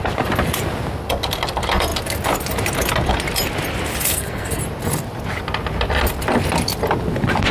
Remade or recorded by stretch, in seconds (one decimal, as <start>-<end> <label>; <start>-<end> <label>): 0.0-4.1 recorded; 4.1-4.6 remade; 4.6-7.5 recorded